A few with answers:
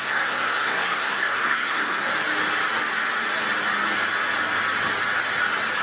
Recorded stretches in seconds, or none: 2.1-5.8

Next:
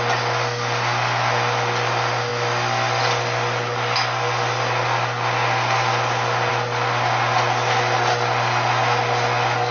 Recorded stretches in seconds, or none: 0.0-9.7

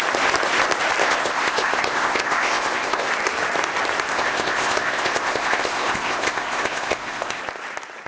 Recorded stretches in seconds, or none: 0.0-1.0; 3.1-4.1; 7.4-8.1

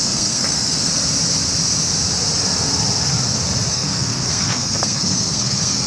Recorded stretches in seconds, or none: 0.9-3.7

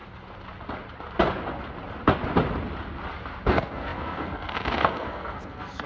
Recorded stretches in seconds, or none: 0.0-3.5